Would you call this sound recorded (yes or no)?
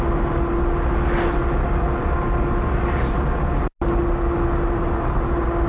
yes